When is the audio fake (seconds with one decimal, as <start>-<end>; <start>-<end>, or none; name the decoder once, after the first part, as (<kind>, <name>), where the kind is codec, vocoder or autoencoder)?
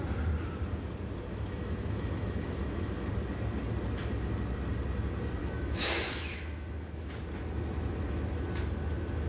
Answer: 1.3-3.1 (autoencoder, DAC-VAE); 5.4-7.1